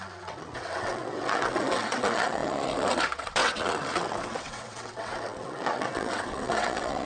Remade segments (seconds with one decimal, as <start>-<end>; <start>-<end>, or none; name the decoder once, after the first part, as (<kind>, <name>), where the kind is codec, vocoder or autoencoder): 0.0-7.1 (vocoder, WaveNeXt)